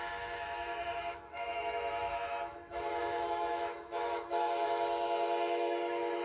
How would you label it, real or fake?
fake